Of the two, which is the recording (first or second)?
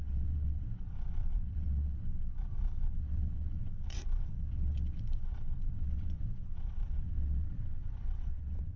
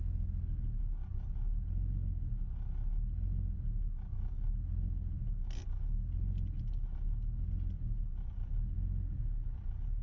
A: second